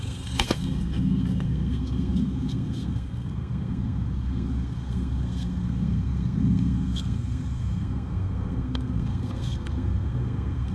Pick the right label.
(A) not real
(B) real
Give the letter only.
A